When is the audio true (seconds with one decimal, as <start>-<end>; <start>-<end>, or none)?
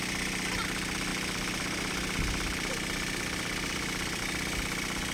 0.0-1.1; 4.2-5.1